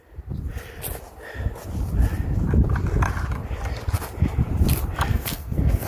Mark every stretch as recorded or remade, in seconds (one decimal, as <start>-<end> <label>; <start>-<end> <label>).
0.0-5.1 recorded; 5.1-5.9 remade

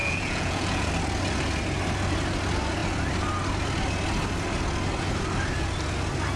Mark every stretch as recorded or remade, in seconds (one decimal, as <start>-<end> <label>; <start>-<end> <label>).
0.0-0.9 remade; 0.9-6.4 recorded

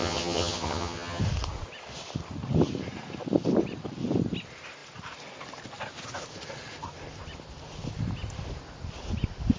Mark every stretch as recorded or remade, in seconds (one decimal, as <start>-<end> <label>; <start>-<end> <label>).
0.0-1.2 remade; 1.2-9.6 recorded

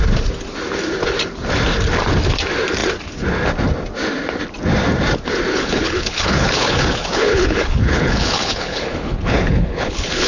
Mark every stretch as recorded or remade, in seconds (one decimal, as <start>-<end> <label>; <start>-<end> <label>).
0.0-5.5 recorded; 5.5-10.3 remade

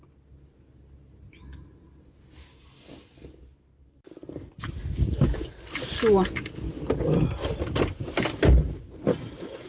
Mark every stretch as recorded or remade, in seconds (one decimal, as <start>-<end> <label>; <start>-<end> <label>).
0.0-9.7 recorded

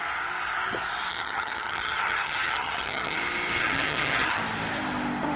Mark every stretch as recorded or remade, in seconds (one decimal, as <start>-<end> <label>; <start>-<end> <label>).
0.0-1.1 recorded; 1.1-3.2 remade; 3.2-3.6 recorded; 3.6-4.4 remade; 4.4-5.4 recorded

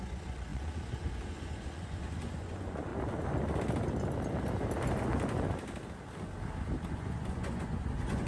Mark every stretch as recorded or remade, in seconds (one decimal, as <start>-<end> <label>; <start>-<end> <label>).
0.0-2.9 remade; 2.9-6.9 recorded; 6.9-8.3 remade

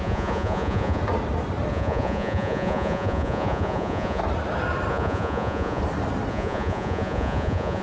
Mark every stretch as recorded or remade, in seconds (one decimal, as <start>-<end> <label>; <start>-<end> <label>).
0.0-1.0 remade; 1.0-1.7 recorded; 1.7-4.2 remade; 4.2-4.9 recorded; 4.9-5.8 remade; 5.8-6.3 recorded; 6.3-7.8 remade